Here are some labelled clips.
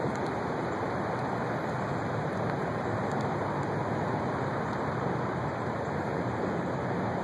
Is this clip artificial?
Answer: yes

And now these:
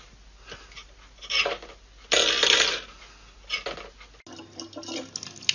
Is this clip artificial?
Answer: no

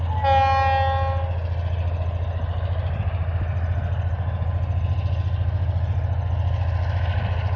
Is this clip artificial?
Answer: no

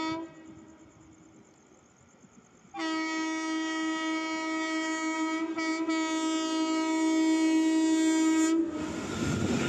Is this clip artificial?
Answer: no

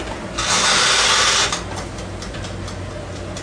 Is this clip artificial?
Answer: no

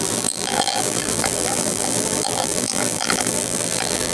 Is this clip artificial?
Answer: yes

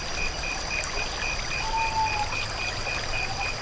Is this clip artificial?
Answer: no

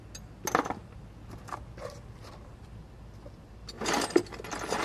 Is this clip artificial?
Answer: no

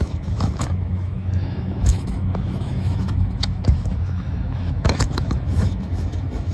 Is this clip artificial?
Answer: yes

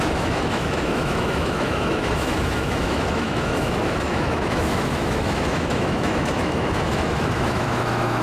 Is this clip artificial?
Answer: yes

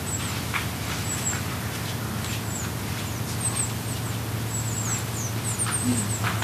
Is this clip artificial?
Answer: no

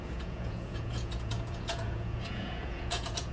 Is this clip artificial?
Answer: yes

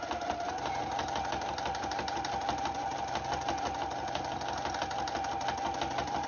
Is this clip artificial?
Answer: no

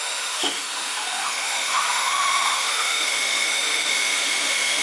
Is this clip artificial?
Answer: yes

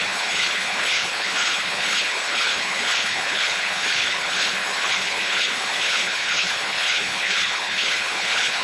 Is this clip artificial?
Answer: yes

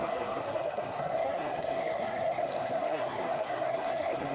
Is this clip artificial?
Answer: yes